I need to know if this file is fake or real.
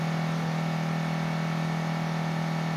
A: real